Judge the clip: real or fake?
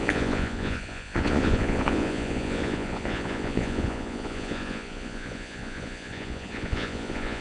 fake